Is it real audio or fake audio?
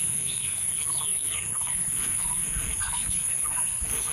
fake